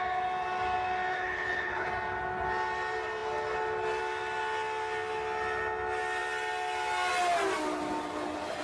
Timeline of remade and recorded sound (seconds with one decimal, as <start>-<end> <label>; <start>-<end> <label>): 0.0-1.1 recorded; 1.1-1.9 remade; 1.9-8.6 recorded